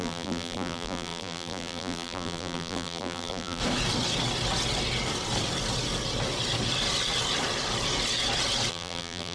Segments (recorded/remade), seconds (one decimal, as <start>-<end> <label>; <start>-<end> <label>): 0.0-3.6 remade; 3.6-8.7 recorded; 8.7-9.3 remade

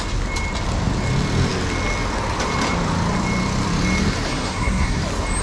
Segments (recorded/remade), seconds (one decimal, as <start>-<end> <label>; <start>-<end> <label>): 0.0-4.3 recorded; 4.3-5.0 remade; 5.0-5.4 recorded

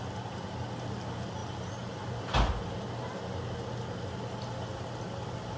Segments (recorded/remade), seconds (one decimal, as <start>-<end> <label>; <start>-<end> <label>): 0.0-5.6 recorded

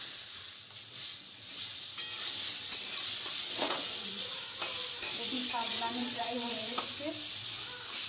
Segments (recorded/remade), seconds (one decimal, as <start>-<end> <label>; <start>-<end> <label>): 0.0-1.1 recorded; 1.1-1.8 remade; 1.8-2.5 recorded; 2.5-4.4 remade; 4.4-6.0 recorded; 6.0-6.8 remade; 6.8-8.1 recorded

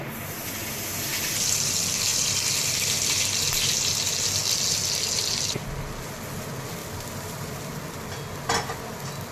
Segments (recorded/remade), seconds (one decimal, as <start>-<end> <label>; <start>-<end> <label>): 0.0-2.1 recorded; 2.1-2.9 remade; 2.9-6.8 recorded; 6.8-7.6 remade; 7.6-9.3 recorded

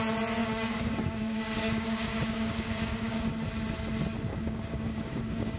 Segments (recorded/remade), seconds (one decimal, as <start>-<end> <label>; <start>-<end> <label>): 0.0-0.4 recorded; 0.4-3.3 remade; 3.3-4.3 recorded; 4.3-5.6 remade